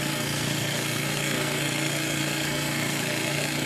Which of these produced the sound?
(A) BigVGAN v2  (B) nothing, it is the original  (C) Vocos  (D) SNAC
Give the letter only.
D